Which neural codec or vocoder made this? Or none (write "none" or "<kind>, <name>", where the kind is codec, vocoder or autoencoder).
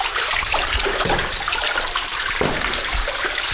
vocoder, BigVGAN v2